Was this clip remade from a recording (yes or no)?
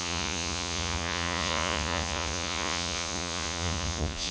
yes